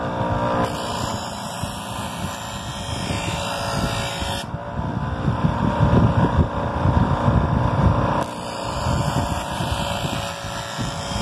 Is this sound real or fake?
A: real